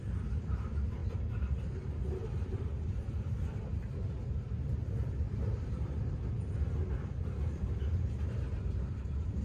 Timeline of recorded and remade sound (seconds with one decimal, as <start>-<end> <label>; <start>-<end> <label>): 0.0-9.4 remade